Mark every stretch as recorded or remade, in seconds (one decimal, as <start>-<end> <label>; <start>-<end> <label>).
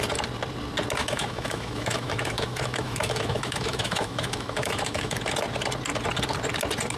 0.0-1.0 recorded; 1.0-5.2 remade; 5.2-7.0 recorded